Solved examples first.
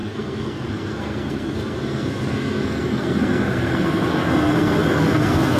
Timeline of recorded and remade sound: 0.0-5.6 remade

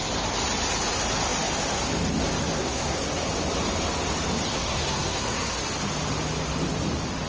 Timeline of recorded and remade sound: 0.0-2.6 recorded; 2.6-3.3 remade; 3.3-4.5 recorded; 4.5-5.6 remade; 5.6-7.3 recorded

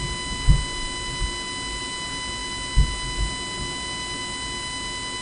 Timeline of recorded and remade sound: 0.0-5.2 recorded

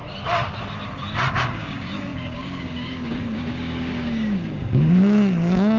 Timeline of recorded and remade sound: 0.0-1.3 recorded; 1.3-5.8 remade

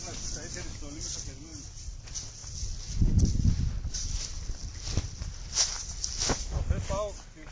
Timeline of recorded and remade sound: 0.0-1.5 recorded; 1.5-2.0 remade; 2.0-7.5 recorded

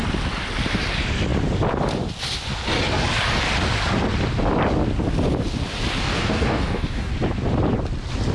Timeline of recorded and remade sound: 0.0-6.0 recorded; 6.0-7.1 remade; 7.1-8.3 recorded